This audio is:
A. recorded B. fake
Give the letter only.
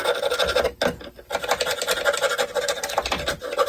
A